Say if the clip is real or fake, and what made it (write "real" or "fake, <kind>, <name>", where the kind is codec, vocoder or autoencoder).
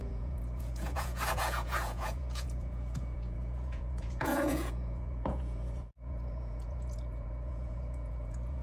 fake, vocoder, Vocos